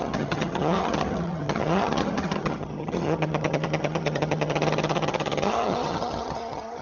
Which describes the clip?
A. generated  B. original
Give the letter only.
A